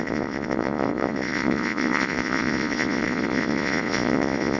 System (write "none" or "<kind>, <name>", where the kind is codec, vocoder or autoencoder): vocoder, Vocos